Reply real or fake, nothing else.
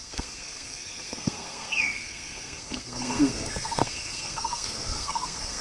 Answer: fake